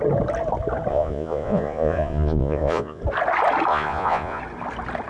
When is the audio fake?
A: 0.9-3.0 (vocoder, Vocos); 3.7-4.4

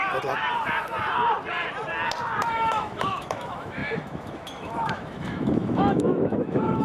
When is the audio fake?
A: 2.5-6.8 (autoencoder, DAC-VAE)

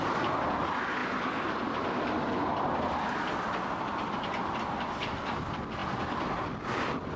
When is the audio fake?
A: none